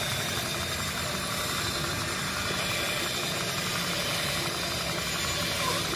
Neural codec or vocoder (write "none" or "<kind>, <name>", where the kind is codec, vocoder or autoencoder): none